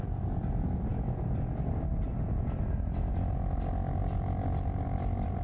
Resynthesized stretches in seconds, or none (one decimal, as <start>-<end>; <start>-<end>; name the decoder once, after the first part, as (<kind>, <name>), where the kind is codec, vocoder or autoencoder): none